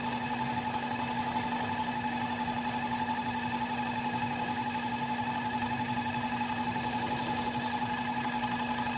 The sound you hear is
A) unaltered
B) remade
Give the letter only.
A